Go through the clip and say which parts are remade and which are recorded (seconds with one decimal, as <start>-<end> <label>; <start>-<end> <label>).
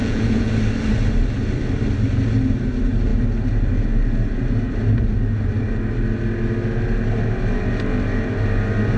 0.0-0.5 remade; 0.5-9.0 recorded